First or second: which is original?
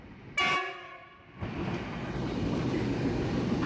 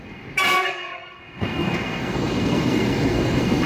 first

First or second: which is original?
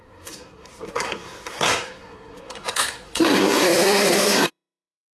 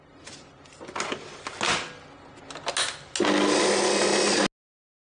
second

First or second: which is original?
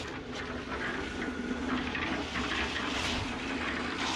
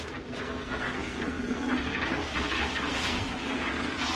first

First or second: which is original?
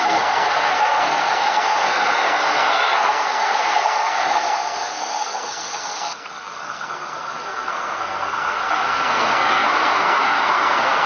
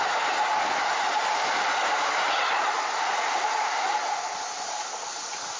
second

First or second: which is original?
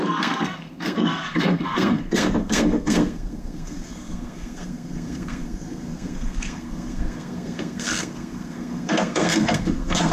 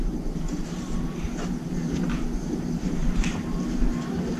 second